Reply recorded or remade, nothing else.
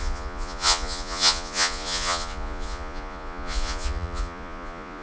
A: remade